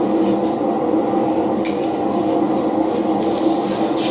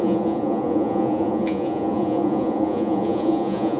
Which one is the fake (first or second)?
second